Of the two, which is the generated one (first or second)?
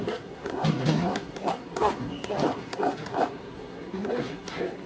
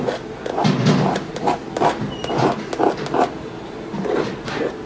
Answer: first